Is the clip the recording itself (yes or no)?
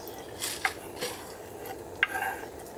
yes